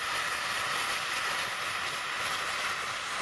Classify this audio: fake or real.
real